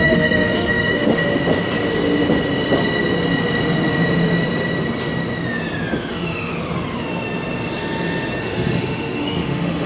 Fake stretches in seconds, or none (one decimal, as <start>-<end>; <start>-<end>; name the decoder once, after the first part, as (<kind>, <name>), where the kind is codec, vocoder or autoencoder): 0.0-1.2 (autoencoder, DAC-VAE); 6.1-6.5; 8.4-9.9